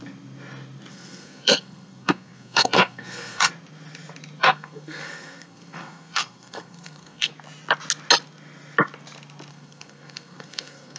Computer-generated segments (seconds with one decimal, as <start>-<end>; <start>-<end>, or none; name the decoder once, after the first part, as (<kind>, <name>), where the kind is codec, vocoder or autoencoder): 0.9-3.5 (codec, SNAC); 4.4-7.3; 9.5-11.0